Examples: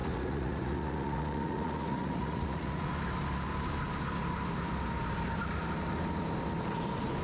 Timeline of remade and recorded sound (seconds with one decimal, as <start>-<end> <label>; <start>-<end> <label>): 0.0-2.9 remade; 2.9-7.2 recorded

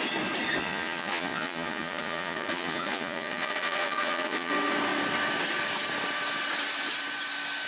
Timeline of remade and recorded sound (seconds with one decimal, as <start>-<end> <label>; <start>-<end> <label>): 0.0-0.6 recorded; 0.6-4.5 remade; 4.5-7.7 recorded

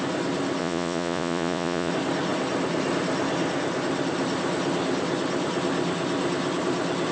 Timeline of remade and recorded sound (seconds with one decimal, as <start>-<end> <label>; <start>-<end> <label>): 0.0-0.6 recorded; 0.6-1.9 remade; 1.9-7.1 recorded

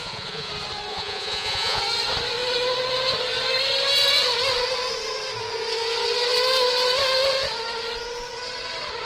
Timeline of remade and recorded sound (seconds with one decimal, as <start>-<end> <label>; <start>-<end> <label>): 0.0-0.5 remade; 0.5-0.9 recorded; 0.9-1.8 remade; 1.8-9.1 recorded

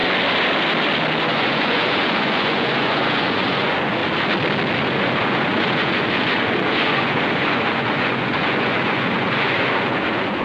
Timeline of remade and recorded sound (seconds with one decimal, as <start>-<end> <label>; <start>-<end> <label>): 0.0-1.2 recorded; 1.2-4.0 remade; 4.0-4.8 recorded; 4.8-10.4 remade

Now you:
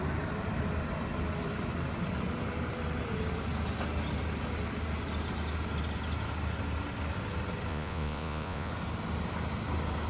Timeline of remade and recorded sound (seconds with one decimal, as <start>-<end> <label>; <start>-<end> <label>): 0.0-7.7 recorded; 7.7-8.7 remade; 8.7-10.1 recorded

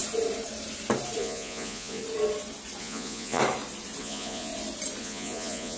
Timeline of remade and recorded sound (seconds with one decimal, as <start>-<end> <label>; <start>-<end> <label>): 0.0-1.2 recorded; 1.2-2.0 remade; 2.0-2.8 recorded; 2.8-3.4 remade; 3.4-4.0 recorded; 4.0-4.5 remade; 4.5-5.0 recorded; 5.0-5.8 remade

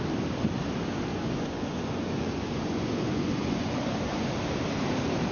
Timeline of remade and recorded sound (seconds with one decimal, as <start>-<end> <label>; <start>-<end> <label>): 0.0-1.1 recorded; 1.1-4.3 remade; 4.3-5.3 recorded